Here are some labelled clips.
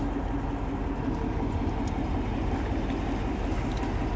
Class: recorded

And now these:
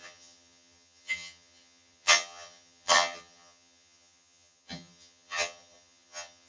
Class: remade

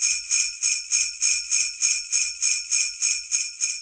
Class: recorded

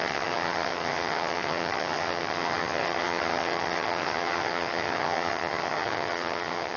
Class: remade